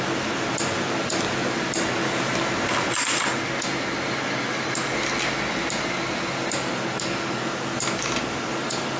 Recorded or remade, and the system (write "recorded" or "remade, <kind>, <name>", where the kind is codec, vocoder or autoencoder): recorded